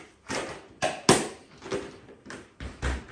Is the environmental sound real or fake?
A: real